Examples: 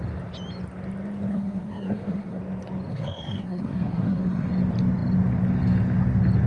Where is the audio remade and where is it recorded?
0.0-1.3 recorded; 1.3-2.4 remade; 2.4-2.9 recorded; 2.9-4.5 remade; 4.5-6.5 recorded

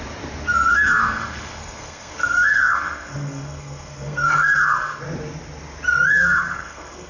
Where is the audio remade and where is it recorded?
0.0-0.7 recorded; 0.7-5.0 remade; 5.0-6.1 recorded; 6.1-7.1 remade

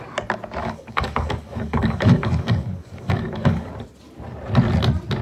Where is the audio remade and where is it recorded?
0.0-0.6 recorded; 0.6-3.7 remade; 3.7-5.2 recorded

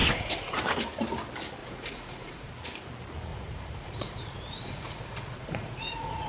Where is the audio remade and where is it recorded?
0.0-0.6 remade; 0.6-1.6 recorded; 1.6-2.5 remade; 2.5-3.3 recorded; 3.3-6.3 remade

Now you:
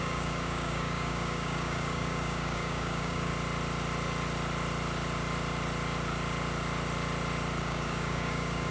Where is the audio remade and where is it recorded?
0.0-3.3 remade; 3.3-7.6 recorded; 7.6-8.7 remade

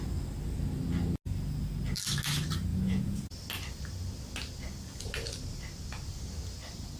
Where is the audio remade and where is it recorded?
0.0-2.7 recorded; 2.7-3.3 remade; 3.3-7.0 recorded

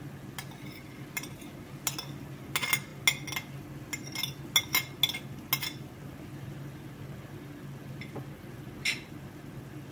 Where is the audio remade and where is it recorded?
0.0-9.9 recorded

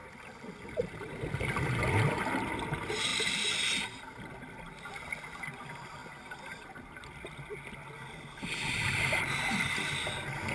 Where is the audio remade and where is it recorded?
0.0-10.5 recorded